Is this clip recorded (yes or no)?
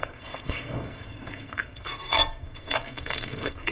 no